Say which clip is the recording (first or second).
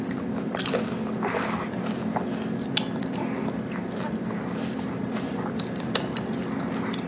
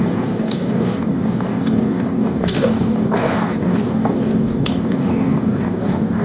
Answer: first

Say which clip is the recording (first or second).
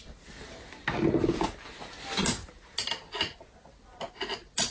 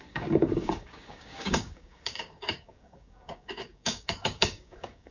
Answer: first